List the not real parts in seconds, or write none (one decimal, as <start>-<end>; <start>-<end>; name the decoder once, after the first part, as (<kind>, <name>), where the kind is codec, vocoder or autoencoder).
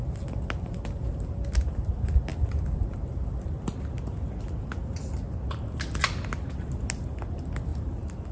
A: none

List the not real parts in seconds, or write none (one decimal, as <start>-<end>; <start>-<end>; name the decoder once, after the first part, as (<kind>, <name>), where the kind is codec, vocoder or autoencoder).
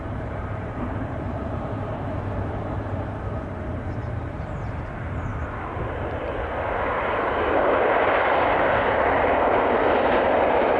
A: 0.0-5.3 (vocoder, BigVGAN v2); 9.2-10.8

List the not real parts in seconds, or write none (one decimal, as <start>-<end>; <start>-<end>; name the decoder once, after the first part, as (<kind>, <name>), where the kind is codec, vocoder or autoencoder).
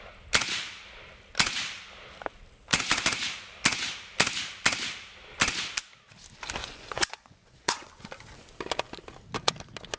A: 6.6-8.1 (vocoder, Vocos)